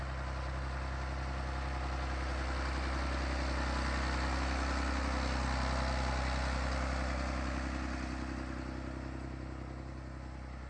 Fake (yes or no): no